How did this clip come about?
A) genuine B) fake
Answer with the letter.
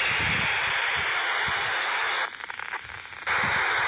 A